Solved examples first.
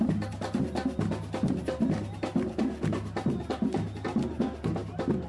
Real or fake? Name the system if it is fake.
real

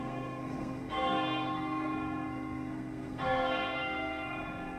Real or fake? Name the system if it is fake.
fake, codec, SNAC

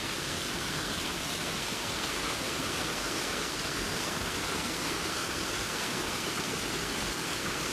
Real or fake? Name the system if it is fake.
fake, codec, SNAC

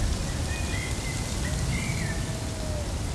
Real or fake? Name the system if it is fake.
real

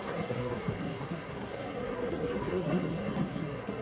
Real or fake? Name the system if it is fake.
fake, codec, SNAC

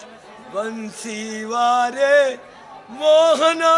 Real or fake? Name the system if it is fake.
real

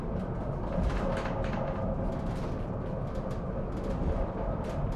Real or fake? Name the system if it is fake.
real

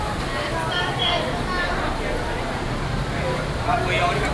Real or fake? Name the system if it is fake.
real